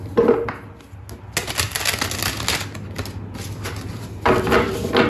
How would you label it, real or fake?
real